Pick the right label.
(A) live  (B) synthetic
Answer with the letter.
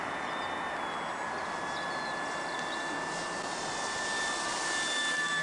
A